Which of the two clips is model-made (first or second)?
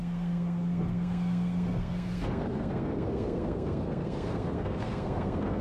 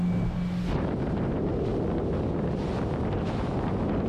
first